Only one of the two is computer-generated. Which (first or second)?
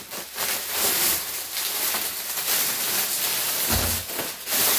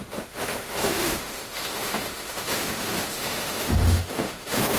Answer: second